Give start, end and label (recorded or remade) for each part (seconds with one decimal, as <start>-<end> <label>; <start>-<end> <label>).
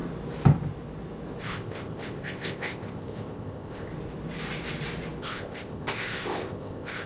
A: 0.0-1.4 recorded; 1.4-3.9 remade; 3.9-5.2 recorded; 5.2-7.1 remade